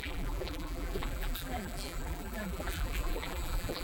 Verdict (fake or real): fake